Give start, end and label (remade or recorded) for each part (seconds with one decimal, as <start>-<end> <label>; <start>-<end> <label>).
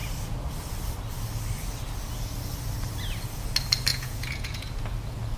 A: 0.0-3.9 recorded; 3.9-4.7 remade; 4.7-5.4 recorded